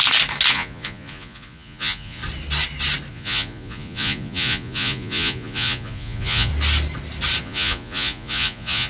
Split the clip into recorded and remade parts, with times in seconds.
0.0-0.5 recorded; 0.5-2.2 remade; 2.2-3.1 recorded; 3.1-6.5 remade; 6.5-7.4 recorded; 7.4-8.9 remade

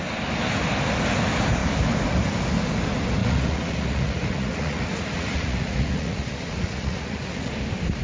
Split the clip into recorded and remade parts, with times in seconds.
0.0-3.2 recorded; 3.2-7.5 remade; 7.5-8.0 recorded